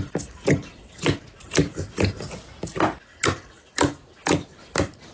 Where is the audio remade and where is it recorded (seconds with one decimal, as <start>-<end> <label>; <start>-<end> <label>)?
0.0-5.1 recorded